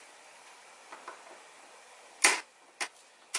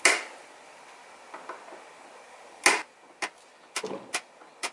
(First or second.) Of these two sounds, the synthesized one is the first